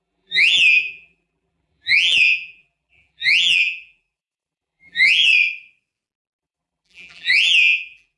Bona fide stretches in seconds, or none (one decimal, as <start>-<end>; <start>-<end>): 5.3-6.4